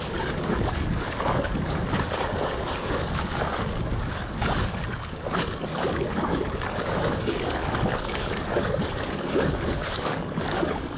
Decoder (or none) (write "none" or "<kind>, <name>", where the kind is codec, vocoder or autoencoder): codec, DAC